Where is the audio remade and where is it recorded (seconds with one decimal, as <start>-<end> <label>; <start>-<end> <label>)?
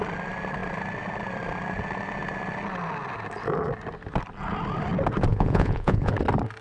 0.0-5.3 recorded; 5.3-6.1 remade; 6.1-6.6 recorded